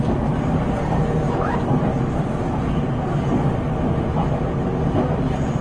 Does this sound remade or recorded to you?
recorded